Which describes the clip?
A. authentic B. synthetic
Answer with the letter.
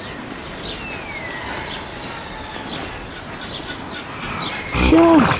A